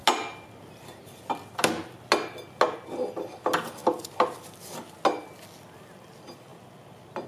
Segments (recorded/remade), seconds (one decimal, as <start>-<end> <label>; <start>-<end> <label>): 0.0-7.3 recorded